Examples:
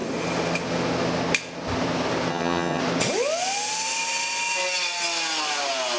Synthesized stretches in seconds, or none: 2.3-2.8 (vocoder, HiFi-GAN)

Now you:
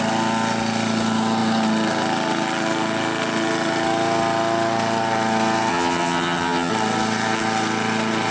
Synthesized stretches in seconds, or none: 5.7-6.7 (vocoder, HiFi-GAN)

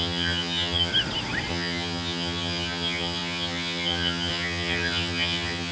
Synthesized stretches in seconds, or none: 0.0-0.9 (vocoder, HiFi-GAN); 1.5-5.7